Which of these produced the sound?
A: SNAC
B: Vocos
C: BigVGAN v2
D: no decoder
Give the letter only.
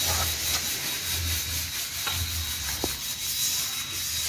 D